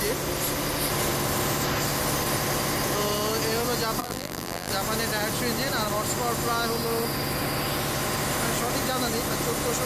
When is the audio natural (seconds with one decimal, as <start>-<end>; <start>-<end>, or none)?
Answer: 0.0-4.0; 4.7-9.9

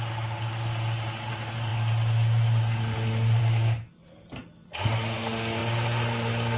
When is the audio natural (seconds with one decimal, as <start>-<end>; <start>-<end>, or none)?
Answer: 0.0-6.6

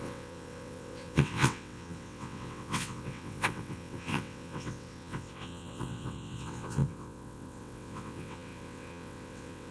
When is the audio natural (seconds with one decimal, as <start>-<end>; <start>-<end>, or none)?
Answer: none

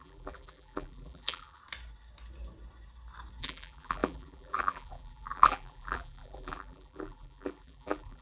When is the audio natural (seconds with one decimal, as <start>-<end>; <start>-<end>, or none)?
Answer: 1.6-3.4

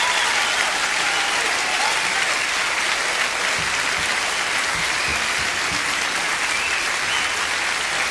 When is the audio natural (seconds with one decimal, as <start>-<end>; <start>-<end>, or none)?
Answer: 0.0-8.1